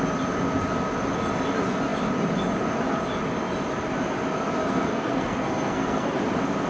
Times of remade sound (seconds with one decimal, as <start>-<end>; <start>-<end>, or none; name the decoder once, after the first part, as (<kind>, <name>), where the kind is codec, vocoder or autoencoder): 4.6-6.2 (codec, SNAC)